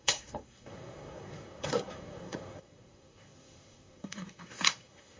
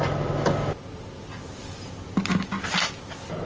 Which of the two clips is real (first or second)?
second